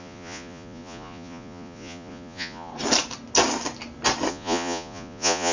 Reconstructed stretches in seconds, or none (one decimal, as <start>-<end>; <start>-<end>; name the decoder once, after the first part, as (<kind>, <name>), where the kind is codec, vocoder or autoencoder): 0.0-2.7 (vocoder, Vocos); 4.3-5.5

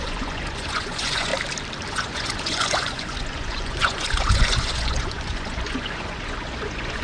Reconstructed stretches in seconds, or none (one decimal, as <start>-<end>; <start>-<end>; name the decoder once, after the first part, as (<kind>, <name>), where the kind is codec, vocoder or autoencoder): 0.0-1.3 (vocoder, Vocos); 1.9-7.0

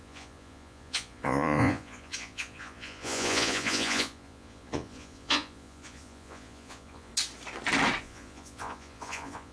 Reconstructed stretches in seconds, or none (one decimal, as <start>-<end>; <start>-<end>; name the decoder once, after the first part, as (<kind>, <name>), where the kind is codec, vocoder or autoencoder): 0.0-7.1 (vocoder, Vocos); 8.0-9.5

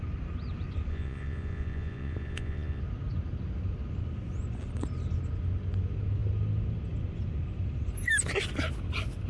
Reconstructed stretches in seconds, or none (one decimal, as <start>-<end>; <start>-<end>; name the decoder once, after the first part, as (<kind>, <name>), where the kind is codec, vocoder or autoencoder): 0.9-2.8 (vocoder, Vocos)